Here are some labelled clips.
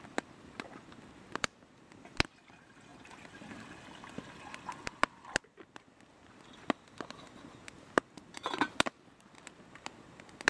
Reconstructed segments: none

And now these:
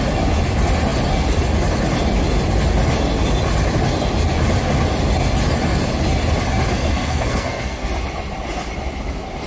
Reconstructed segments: 6.7-7.9 (codec, SNAC)